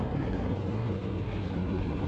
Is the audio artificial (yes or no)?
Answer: yes